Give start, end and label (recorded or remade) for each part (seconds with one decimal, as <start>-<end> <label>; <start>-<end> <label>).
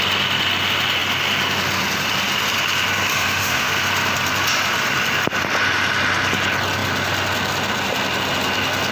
0.0-3.1 recorded; 3.1-3.7 remade; 3.7-8.9 recorded